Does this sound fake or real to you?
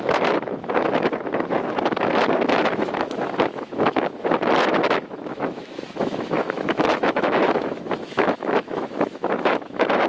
fake